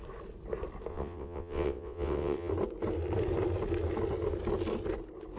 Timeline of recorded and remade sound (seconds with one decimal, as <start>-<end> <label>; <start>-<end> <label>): 0.0-0.9 recorded; 0.9-2.5 remade; 2.5-5.4 recorded